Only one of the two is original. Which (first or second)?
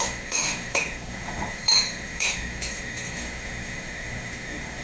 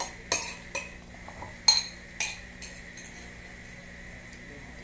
second